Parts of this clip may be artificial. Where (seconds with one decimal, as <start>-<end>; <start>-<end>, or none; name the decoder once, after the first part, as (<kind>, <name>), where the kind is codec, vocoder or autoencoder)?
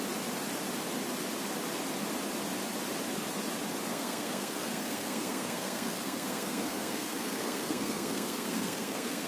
3.9-9.3 (codec, SNAC)